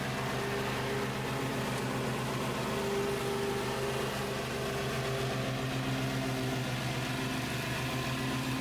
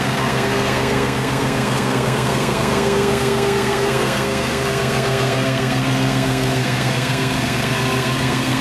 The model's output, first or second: second